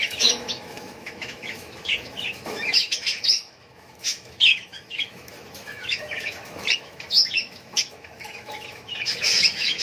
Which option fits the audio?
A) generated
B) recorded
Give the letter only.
A